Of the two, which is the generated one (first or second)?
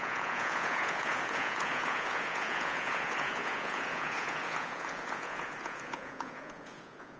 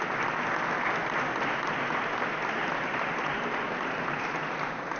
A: first